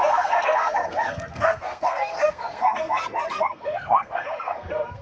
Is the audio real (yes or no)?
no